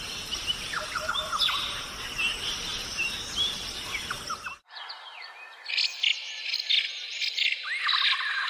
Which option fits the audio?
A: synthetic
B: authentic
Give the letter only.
B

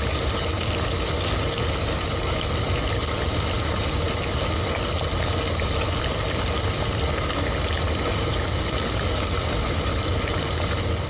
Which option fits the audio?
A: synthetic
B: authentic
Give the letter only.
B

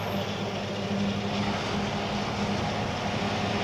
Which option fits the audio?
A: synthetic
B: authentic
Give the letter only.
B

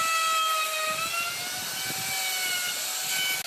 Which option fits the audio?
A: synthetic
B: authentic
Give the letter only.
B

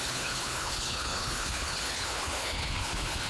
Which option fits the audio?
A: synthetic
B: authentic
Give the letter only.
A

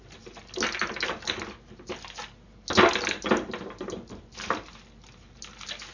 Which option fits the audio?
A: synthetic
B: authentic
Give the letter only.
B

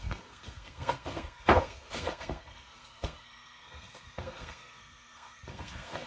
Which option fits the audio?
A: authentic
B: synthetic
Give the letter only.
B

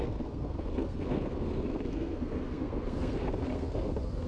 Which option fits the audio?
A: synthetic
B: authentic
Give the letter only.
A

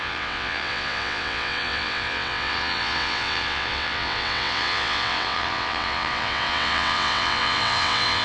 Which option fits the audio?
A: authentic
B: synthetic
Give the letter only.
B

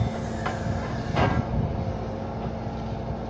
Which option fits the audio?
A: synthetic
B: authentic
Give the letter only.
B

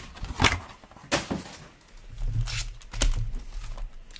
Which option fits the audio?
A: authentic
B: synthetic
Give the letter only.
A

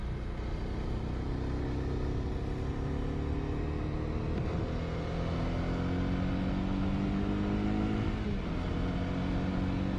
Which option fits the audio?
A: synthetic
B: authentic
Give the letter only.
B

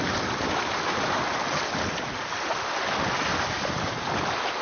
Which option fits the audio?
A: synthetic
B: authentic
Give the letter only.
B